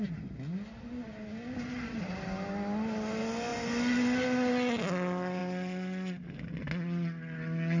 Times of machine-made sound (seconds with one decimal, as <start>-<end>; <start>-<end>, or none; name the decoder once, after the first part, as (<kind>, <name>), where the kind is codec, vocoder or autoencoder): none